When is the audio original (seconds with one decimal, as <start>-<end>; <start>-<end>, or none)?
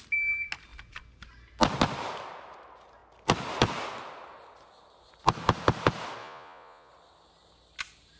0.0-6.2; 6.9-8.2